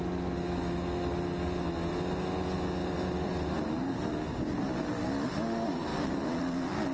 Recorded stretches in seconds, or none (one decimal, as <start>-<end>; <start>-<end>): 0.0-2.8; 3.3-5.9; 6.4-6.9

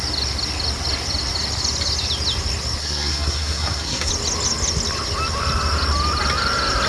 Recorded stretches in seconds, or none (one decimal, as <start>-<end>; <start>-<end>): 0.0-2.8; 4.1-6.9

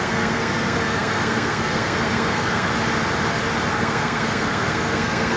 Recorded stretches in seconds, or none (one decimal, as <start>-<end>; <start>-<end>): 2.7-3.7

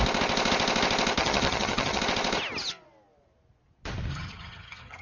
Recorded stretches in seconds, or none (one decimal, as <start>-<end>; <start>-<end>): 0.0-1.2; 2.0-4.1